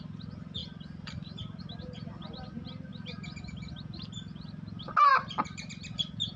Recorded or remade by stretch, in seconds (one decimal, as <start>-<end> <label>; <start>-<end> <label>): 0.0-5.1 recorded; 5.1-5.7 remade; 5.7-6.4 recorded